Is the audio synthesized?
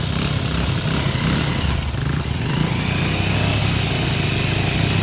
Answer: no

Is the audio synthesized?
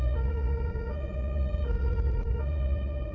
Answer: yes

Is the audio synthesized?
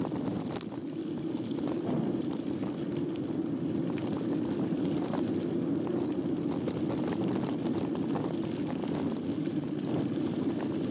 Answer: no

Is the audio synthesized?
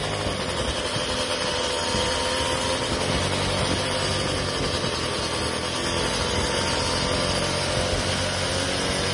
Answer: no